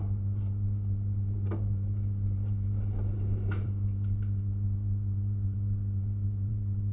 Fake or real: fake